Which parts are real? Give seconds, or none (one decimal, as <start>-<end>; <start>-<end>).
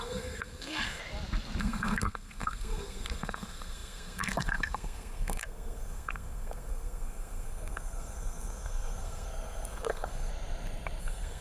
1.0-1.6; 10.3-11.0